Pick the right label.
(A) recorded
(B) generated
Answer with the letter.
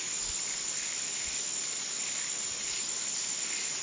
A